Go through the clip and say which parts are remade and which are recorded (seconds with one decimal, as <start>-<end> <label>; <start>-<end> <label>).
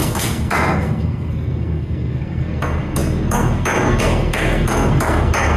0.0-5.6 remade